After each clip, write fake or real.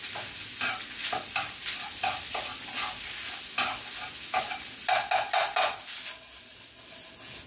real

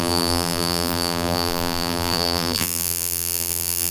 fake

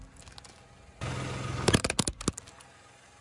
real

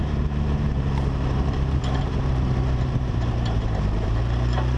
fake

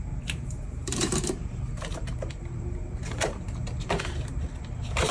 fake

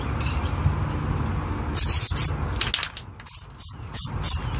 real